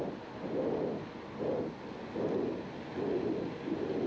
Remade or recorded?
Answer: recorded